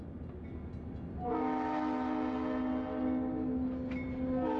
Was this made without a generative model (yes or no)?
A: yes